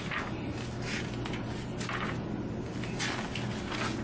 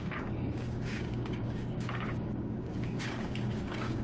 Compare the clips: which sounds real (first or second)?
first